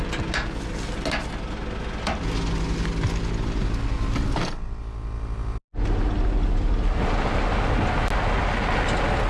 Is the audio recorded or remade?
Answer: recorded